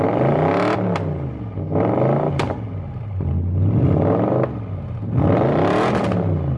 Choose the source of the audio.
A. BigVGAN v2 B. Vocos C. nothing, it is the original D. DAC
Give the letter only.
C